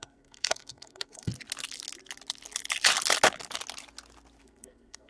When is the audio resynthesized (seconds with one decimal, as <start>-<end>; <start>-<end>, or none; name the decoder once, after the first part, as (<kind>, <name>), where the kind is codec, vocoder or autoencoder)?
0.0-1.3 (codec, SNAC); 4.4-5.1